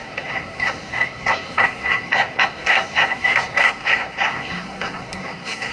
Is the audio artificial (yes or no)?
yes